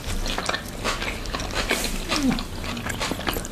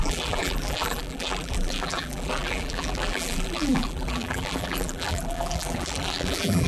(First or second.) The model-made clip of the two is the second